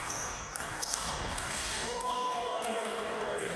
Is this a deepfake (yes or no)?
yes